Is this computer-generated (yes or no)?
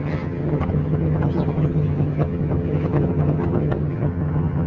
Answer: yes